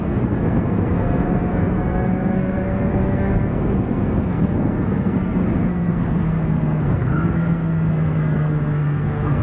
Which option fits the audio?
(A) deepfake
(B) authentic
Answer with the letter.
A